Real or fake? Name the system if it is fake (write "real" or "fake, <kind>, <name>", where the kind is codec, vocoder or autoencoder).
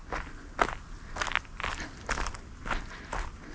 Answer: real